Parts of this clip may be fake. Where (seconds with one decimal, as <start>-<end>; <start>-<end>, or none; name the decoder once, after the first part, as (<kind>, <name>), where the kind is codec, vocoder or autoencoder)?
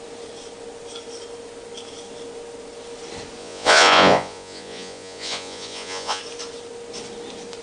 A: 3.4-6.2 (vocoder, Vocos)